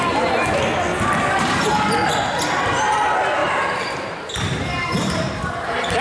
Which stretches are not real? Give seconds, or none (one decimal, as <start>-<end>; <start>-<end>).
0.9-1.7; 3.4-5.4